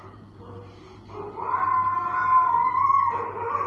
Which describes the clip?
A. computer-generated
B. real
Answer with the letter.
B